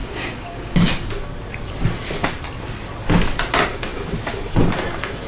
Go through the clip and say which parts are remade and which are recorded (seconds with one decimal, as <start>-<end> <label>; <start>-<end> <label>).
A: 0.0-1.1 remade; 1.1-5.3 recorded

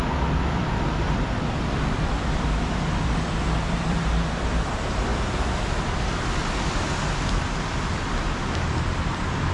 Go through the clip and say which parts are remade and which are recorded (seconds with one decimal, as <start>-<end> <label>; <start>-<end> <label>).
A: 0.0-5.1 remade; 5.1-5.6 recorded; 5.6-9.5 remade

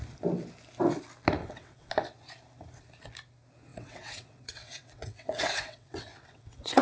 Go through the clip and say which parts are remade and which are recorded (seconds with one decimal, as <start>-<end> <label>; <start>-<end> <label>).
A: 0.0-1.4 recorded; 1.4-1.9 remade; 1.9-3.7 recorded; 3.7-6.8 remade

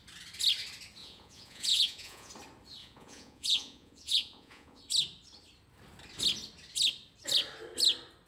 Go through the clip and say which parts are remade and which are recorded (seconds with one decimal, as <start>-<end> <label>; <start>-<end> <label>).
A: 0.0-1.0 recorded; 1.0-2.3 remade; 2.3-2.8 recorded; 2.8-4.8 remade; 4.8-8.3 recorded

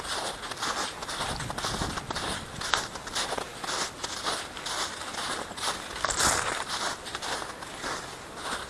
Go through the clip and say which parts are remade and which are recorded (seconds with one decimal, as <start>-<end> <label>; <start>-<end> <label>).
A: 0.0-8.7 recorded

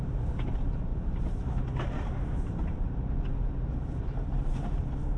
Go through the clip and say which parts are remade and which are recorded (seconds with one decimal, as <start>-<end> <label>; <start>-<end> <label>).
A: 0.0-0.9 remade; 0.9-4.0 recorded; 4.0-5.2 remade

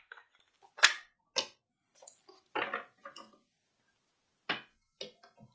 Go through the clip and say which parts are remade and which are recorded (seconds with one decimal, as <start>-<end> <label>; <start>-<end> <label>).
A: 0.0-5.5 recorded